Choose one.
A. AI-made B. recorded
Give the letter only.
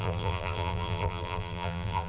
A